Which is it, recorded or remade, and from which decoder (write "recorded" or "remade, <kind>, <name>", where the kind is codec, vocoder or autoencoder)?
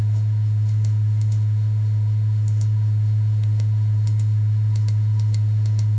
remade, autoencoder, DAC-VAE